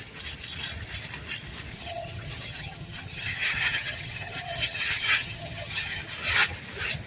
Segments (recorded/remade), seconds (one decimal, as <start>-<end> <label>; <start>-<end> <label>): 0.0-1.7 recorded; 1.7-6.0 remade; 6.0-7.1 recorded